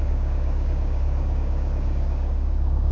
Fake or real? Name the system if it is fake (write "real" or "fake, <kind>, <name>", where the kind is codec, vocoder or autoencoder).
fake, codec, DAC